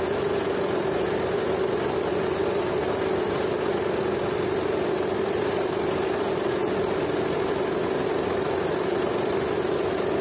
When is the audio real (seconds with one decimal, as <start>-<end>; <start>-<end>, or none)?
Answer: 0.0-10.2